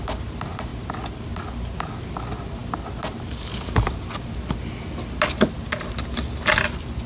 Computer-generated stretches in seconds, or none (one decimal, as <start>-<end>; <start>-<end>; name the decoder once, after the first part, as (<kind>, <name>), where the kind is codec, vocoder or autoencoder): none

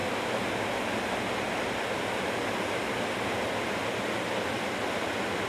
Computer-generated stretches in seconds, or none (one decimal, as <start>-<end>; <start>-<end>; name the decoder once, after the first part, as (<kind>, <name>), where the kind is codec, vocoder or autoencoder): none

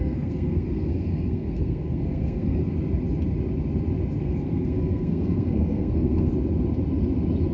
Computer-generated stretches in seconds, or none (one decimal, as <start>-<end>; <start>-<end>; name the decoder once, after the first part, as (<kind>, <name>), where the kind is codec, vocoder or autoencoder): 0.0-2.6 (codec, SNAC); 4.2-6.3